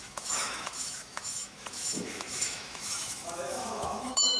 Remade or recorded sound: remade